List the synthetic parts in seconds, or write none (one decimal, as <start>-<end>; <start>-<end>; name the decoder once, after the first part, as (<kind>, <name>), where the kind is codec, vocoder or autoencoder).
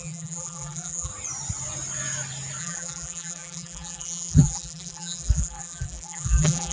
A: 0.0-1.1 (vocoder, BigVGAN v2); 2.6-6.7